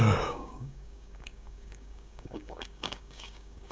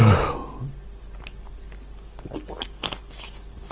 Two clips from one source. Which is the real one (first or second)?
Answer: second